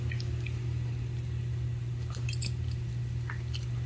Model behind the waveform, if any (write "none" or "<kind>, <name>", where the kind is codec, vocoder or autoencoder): none